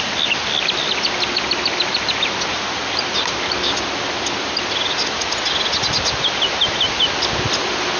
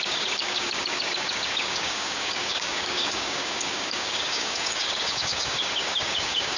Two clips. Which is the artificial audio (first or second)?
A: second